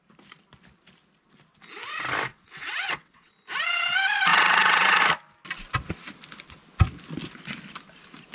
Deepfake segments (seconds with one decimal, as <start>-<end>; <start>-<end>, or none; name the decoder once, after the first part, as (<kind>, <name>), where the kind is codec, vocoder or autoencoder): 2.3-3.3 (vocoder, WaveNeXt); 4.3-5.0